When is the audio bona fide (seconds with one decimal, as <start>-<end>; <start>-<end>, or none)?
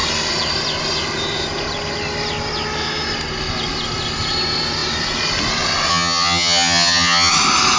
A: 0.0-5.9; 7.3-7.8